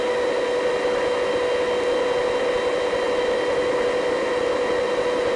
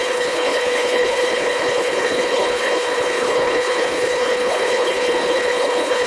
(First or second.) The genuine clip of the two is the first